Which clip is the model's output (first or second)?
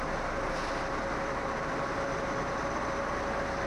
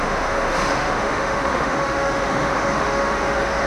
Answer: second